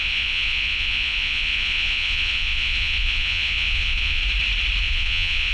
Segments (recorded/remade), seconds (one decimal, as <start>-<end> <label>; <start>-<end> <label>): 0.0-4.2 remade; 4.2-4.8 recorded; 4.8-5.5 remade